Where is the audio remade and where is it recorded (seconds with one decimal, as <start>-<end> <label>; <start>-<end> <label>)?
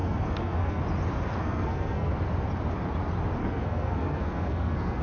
0.0-0.8 remade; 0.8-1.4 recorded; 1.4-2.1 remade; 2.1-3.4 recorded; 3.4-5.0 remade